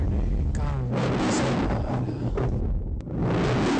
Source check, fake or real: real